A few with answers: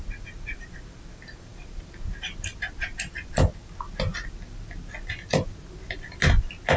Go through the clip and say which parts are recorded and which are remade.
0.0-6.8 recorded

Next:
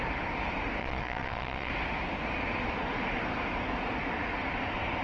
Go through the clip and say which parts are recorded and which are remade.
0.0-0.8 recorded; 0.8-1.7 remade; 1.7-5.0 recorded